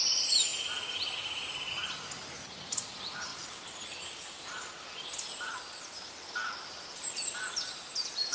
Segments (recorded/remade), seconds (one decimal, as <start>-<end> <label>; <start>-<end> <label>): 0.0-8.3 recorded